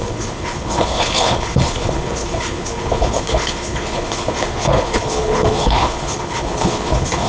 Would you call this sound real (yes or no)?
no